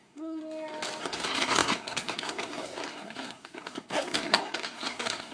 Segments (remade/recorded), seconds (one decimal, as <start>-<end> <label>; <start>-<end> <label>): 0.0-0.4 remade; 0.4-1.0 recorded; 1.0-5.3 remade